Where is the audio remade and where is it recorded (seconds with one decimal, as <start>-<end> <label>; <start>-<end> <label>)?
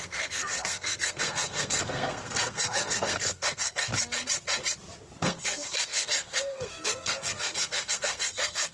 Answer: 0.0-3.9 remade; 3.9-5.2 recorded; 5.2-8.7 remade